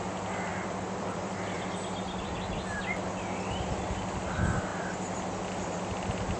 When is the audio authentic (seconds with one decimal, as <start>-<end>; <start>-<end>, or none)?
0.0-0.5; 2.8-4.7; 5.8-6.4